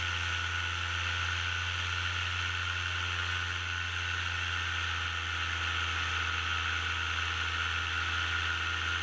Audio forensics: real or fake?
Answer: real